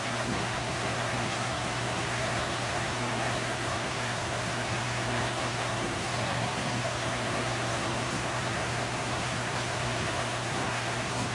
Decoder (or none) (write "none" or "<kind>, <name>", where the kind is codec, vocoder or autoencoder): codec, SNAC